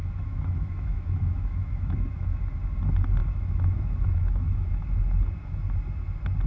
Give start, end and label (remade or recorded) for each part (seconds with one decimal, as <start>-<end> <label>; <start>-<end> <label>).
0.0-2.4 remade; 2.4-3.2 recorded; 3.2-4.9 remade; 4.9-6.5 recorded